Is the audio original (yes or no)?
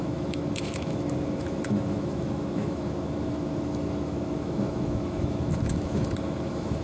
no